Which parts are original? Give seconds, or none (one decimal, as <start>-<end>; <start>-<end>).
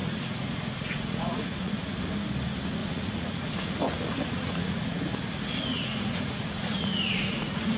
1.7-2.8; 5.0-5.7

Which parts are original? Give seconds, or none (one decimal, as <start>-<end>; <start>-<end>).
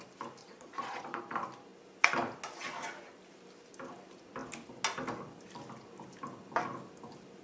0.0-0.4; 1.2-7.4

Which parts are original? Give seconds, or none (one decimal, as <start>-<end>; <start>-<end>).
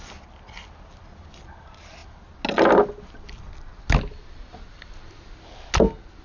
0.0-6.2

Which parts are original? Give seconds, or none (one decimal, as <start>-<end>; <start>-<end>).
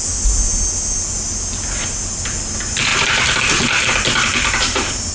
0.0-5.1